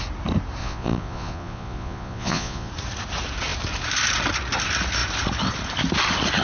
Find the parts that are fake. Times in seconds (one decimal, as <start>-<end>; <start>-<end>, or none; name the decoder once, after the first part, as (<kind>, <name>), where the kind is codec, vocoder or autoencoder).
0.6-2.7 (vocoder, Vocos)